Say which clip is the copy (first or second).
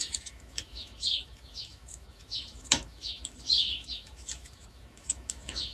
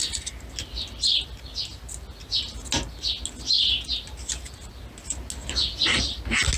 first